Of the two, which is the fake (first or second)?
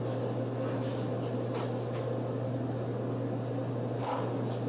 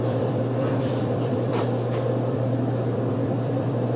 second